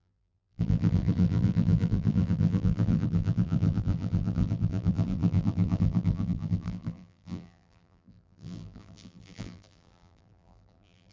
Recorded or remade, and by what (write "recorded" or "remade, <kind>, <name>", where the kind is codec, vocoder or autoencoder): remade, vocoder, BigVGAN v2